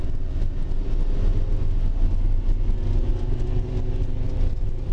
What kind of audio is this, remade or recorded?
recorded